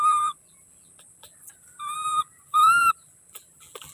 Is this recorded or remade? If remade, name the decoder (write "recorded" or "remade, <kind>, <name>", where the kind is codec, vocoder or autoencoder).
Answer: remade, vocoder, BigVGAN v2